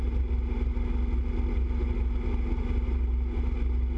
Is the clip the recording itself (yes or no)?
yes